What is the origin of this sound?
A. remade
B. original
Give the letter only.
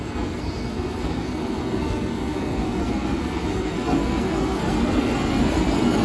A